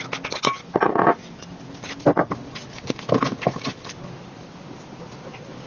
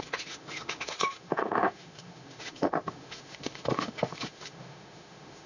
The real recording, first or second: first